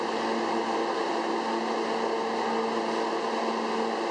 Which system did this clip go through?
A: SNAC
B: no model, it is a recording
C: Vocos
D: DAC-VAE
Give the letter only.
B